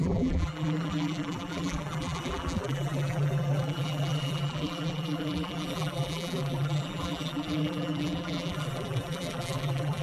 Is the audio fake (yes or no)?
yes